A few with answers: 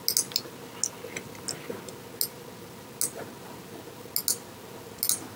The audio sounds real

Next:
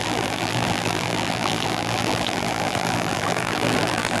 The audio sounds fake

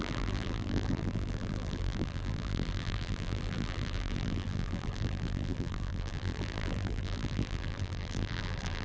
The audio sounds fake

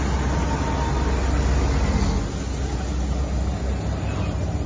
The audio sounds real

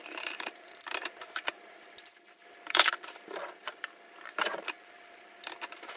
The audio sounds fake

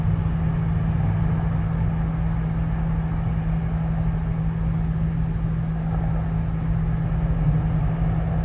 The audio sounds real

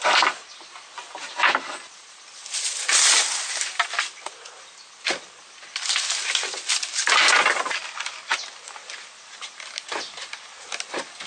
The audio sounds real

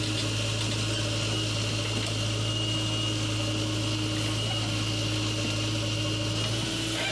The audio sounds real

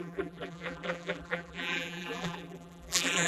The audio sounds fake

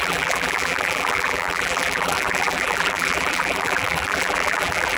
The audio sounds fake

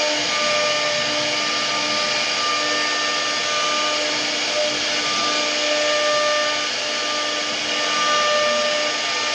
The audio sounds real